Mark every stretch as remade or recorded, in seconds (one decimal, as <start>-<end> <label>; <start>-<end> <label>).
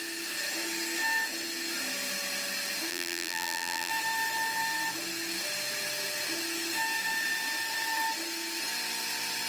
0.0-2.9 recorded; 2.9-3.9 remade; 3.9-9.5 recorded